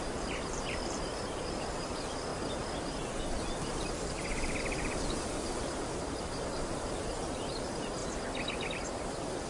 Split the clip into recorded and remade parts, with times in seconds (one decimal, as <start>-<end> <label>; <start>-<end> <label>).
0.0-2.3 remade; 2.3-4.6 recorded; 4.6-8.0 remade; 8.0-8.7 recorded; 8.7-9.5 remade